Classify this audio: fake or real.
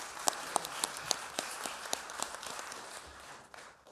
fake